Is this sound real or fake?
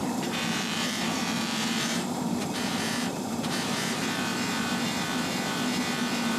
fake